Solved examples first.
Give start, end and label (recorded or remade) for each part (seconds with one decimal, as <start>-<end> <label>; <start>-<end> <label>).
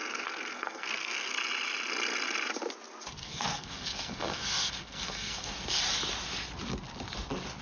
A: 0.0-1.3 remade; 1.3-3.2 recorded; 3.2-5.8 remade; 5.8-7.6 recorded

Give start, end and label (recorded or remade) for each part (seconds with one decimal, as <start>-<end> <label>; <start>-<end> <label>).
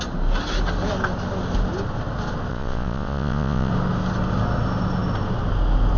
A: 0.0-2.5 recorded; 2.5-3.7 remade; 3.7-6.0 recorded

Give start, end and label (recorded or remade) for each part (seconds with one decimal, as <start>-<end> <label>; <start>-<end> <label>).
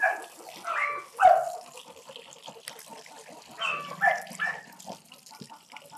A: 0.0-6.0 recorded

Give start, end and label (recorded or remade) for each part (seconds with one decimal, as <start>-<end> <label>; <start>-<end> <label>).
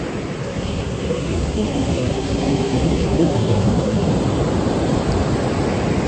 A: 0.0-0.4 recorded; 0.4-4.1 remade; 4.1-6.1 recorded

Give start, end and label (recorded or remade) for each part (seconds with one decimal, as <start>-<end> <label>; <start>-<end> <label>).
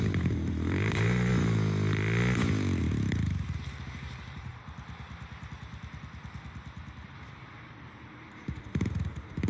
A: 0.0-1.3 remade; 1.3-2.8 recorded; 2.8-4.5 remade; 4.5-7.3 recorded; 7.3-9.5 remade